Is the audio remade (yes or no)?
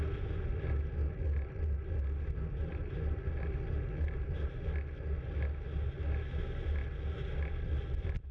no